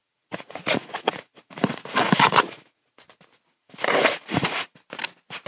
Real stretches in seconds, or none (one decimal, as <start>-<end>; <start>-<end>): 2.9-3.5; 4.8-5.5